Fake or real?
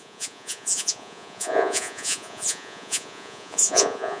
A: fake